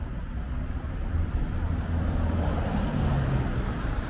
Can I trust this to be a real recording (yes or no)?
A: yes